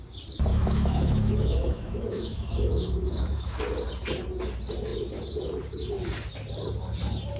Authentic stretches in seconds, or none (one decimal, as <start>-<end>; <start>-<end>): 0.0-0.5; 3.6-7.4